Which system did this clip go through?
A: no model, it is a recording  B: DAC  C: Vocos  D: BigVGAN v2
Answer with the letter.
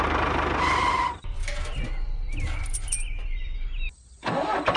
D